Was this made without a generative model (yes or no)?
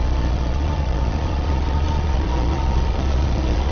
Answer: no